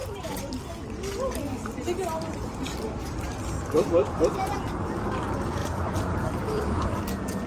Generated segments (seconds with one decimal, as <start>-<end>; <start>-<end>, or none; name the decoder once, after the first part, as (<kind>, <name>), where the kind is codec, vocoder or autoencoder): 0.0-0.6 (vocoder, BigVGAN v2); 4.0-4.8; 5.6-7.0